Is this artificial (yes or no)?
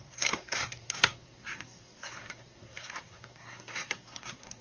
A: yes